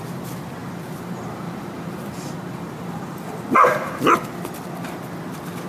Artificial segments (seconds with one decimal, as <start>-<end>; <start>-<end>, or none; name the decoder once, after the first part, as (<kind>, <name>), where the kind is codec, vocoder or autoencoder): 0.6-4.0 (vocoder, BigVGAN v2)